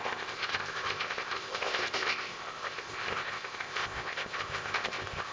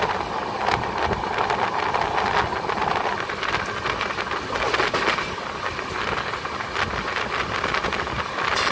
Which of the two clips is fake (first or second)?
first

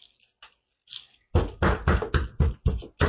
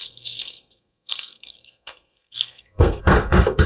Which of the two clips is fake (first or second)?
second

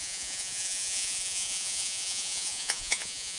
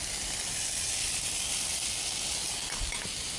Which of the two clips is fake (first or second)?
first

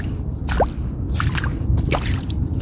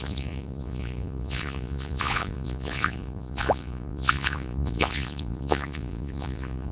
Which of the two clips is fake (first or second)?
second